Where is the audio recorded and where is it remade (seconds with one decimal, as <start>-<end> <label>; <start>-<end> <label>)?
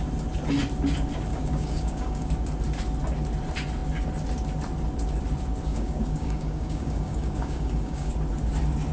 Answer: 0.0-1.3 recorded; 1.3-2.3 remade; 2.3-5.7 recorded; 5.7-8.1 remade; 8.1-8.9 recorded